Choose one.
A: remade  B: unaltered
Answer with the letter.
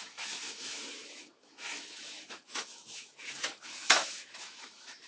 A